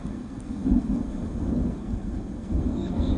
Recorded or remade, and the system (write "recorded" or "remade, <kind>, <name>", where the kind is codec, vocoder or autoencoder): remade, codec, SNAC